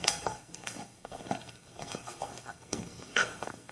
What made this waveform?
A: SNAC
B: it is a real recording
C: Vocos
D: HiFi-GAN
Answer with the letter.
A